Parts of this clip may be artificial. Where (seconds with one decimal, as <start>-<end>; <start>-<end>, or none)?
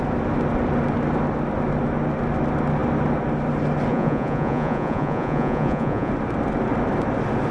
3.9-6.1